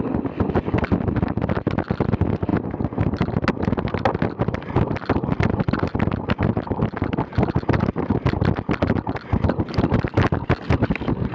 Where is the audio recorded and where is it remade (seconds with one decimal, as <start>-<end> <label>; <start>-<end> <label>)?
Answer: 0.0-11.3 recorded

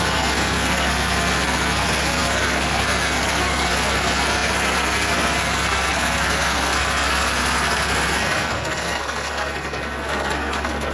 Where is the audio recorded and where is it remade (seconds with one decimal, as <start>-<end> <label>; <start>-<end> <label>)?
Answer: 0.0-10.9 remade

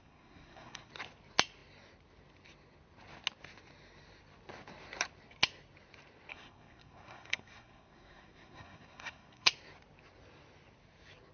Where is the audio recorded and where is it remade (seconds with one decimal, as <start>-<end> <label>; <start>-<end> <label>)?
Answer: 0.0-0.9 remade; 0.9-6.3 recorded; 6.3-9.5 remade; 9.5-11.3 recorded

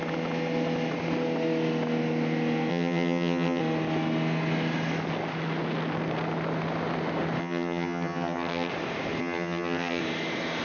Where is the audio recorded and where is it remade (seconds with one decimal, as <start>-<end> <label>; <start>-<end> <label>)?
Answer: 0.0-2.7 recorded; 2.7-3.6 remade; 3.6-7.4 recorded; 7.4-8.7 remade; 8.7-9.2 recorded; 9.2-10.0 remade; 10.0-10.6 recorded

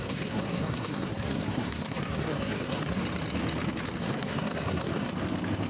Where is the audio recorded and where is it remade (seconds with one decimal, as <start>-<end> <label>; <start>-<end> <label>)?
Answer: 0.0-3.0 remade; 3.0-4.0 recorded; 4.0-5.1 remade; 5.1-5.7 recorded

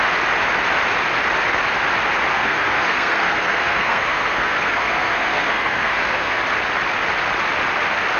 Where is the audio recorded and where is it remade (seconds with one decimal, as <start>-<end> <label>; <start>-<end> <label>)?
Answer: 0.0-2.3 recorded; 2.3-6.4 remade; 6.4-8.2 recorded

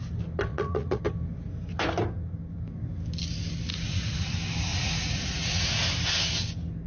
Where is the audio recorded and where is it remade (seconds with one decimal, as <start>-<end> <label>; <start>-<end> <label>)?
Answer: 0.0-0.5 recorded; 0.5-1.0 remade; 1.0-3.7 recorded; 3.7-4.3 remade; 4.3-4.7 recorded; 4.7-5.8 remade; 5.8-6.9 recorded

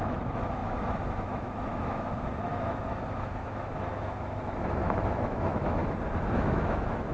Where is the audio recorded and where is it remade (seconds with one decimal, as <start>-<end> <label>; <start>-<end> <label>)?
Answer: 0.0-5.8 remade; 5.8-6.3 recorded; 6.3-7.1 remade